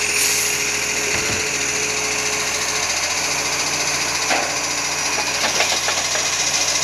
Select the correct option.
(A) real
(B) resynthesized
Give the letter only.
A